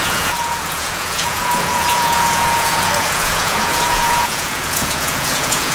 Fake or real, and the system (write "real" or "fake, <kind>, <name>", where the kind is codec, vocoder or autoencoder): fake, vocoder, Vocos